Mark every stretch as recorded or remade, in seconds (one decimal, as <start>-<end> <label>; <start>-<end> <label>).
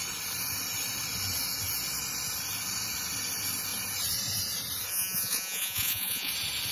0.0-4.9 recorded; 4.9-6.3 remade; 6.3-6.7 recorded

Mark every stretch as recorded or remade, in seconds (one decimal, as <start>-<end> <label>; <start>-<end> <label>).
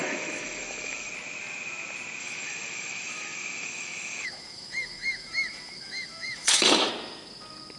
0.0-1.1 remade; 1.1-2.2 recorded; 2.2-6.9 remade; 6.9-7.8 recorded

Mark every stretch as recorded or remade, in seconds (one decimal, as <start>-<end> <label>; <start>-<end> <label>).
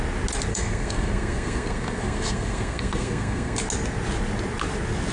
0.0-0.5 recorded; 0.5-3.6 remade; 3.6-5.1 recorded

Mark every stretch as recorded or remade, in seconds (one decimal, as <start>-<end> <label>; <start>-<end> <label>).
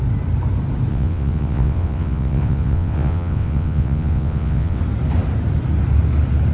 0.0-0.9 recorded; 0.9-4.8 remade; 4.8-6.5 recorded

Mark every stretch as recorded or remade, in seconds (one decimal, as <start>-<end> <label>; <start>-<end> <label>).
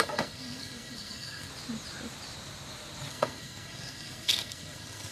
0.0-1.5 remade; 1.5-3.1 recorded; 3.1-5.1 remade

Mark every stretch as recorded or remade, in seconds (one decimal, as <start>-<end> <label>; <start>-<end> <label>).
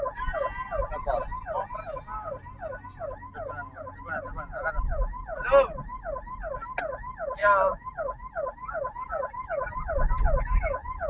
0.0-11.1 recorded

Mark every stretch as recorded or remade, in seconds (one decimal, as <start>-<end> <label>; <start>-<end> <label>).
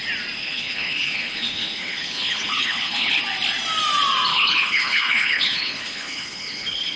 0.0-0.4 recorded; 0.4-3.2 remade; 3.2-4.3 recorded; 4.3-7.0 remade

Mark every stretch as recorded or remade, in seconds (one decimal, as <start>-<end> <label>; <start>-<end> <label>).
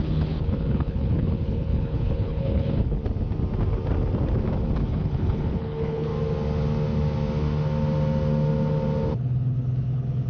0.0-3.0 remade; 3.0-4.8 recorded; 4.8-6.1 remade; 6.1-9.1 recorded; 9.1-10.3 remade